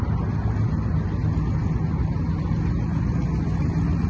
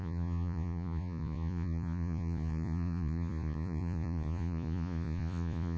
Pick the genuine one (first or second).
first